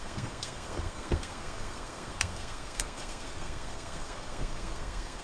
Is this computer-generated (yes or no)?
yes